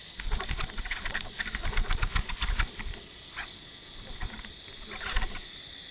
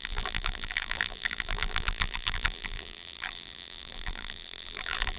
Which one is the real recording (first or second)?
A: first